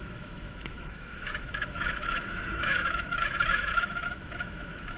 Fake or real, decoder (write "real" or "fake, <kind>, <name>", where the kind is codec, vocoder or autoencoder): fake, autoencoder, DAC-VAE